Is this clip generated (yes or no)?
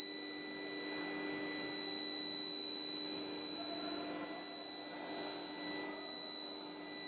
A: no